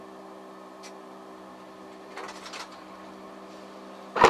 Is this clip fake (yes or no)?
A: no